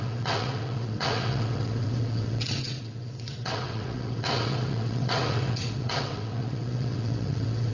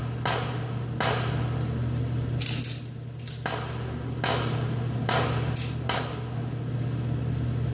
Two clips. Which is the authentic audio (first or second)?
second